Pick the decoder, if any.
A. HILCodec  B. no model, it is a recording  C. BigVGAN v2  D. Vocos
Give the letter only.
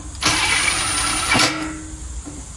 B